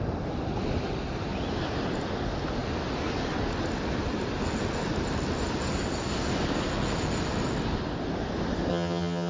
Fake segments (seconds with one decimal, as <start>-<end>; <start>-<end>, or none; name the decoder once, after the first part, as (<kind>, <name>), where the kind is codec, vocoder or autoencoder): 8.7-9.3 (vocoder, HiFi-GAN)